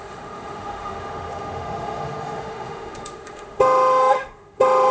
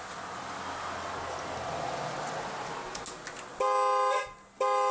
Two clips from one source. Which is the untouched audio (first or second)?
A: second